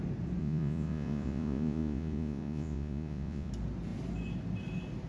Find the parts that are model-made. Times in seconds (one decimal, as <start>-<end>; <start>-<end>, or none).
0.4-3.5